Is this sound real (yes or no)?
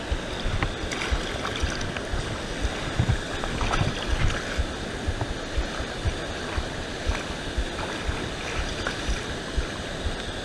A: yes